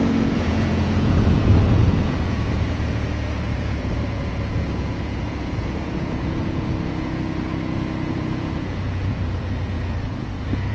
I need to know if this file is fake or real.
fake